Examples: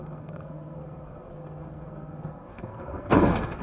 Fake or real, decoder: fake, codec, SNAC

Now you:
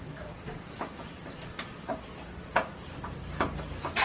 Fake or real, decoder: real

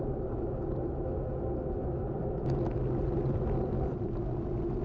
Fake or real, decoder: real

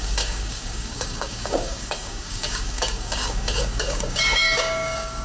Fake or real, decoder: fake, codec, DAC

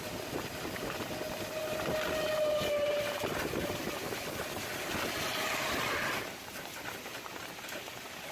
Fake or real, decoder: real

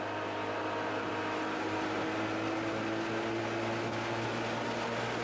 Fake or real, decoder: real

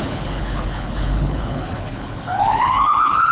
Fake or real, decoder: fake, codec, HILCodec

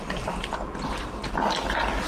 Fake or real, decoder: real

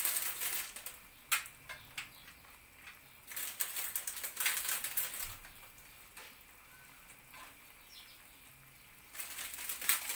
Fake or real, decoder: real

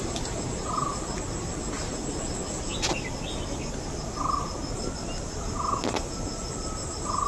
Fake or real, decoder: real